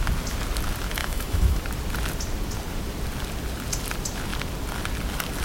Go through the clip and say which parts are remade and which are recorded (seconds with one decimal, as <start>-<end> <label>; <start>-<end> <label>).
0.0-1.0 recorded; 1.0-1.6 remade; 1.6-5.4 recorded